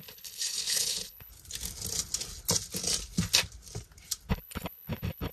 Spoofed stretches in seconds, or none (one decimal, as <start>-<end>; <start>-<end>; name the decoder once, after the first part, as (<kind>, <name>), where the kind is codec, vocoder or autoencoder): 0.0-1.3 (codec, HILCodec); 4.3-5.3